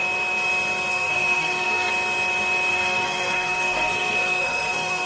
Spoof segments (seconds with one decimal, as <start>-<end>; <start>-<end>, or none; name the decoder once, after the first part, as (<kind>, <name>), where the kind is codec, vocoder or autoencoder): 0.9-1.9 (codec, SNAC); 2.7-5.1